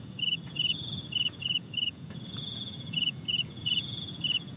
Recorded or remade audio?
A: remade